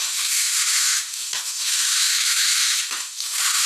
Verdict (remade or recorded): remade